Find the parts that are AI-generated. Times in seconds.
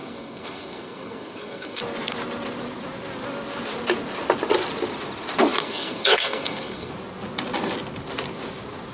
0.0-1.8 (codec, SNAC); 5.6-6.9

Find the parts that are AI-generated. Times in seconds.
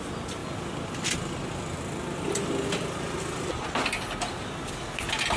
none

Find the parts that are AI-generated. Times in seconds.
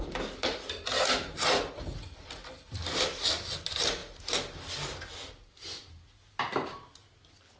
none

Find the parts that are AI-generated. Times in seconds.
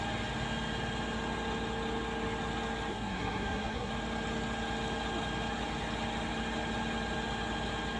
2.9-3.9 (codec, SNAC)